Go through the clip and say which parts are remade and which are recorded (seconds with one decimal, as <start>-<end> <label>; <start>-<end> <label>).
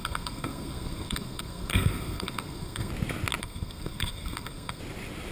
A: 0.0-2.9 remade; 2.9-3.4 recorded; 3.4-4.8 remade; 4.8-5.3 recorded